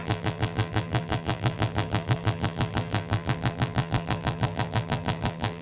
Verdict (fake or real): fake